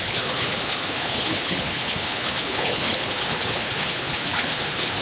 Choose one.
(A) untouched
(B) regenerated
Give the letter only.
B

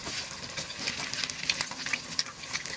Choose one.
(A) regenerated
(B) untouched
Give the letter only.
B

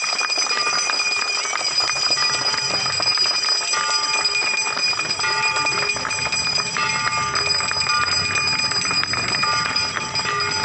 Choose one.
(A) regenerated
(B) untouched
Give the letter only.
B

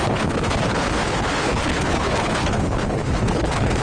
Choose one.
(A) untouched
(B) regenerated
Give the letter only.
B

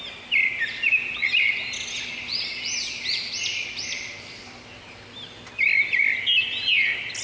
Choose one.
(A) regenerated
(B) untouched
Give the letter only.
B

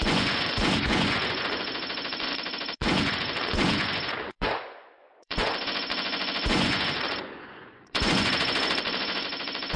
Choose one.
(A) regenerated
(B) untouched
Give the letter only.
A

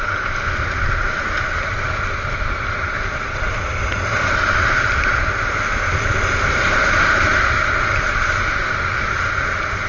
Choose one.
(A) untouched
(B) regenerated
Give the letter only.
A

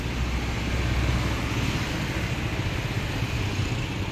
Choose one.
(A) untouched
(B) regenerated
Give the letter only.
A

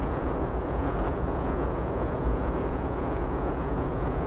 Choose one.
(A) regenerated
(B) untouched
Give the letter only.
A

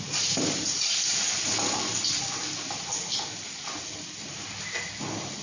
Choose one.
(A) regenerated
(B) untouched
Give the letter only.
B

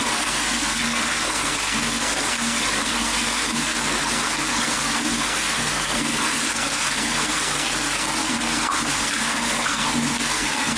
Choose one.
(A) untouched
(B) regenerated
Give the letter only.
B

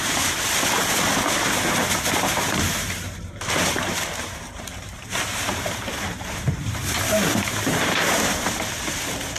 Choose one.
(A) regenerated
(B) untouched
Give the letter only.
A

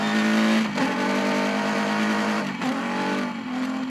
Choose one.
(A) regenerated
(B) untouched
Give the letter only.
B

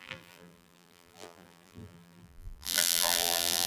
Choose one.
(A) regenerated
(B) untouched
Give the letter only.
A